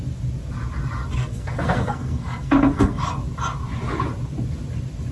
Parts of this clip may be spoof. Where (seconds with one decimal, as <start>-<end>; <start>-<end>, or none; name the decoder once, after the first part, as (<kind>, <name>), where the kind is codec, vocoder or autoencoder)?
1.2-3.0 (codec, SNAC)